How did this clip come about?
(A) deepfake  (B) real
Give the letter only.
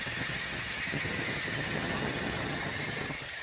A